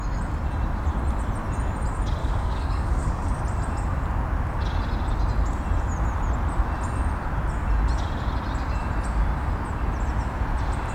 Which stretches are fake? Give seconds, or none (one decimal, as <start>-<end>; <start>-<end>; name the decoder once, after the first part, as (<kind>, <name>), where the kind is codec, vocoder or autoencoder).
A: 2.2-3.4 (codec, DAC)

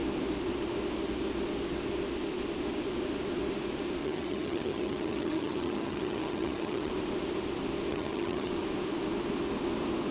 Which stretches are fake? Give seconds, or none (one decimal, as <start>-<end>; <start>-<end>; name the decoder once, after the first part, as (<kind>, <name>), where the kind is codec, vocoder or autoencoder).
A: 4.0-6.9 (vocoder, HiFi-GAN); 7.9-8.5